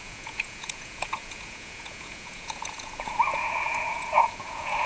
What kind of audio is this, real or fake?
fake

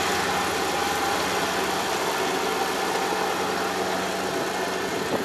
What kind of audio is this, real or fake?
real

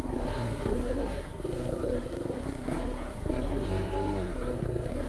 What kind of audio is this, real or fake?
fake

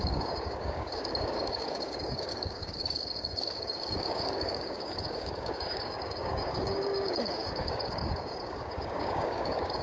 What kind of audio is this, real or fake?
fake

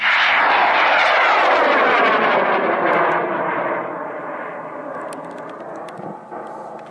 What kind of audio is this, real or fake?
real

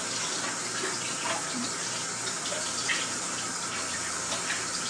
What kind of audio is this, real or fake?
real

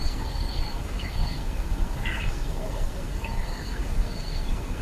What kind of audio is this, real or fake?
fake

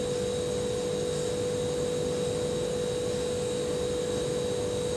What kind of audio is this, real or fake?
real